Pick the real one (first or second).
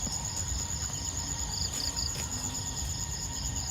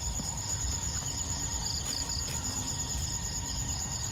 first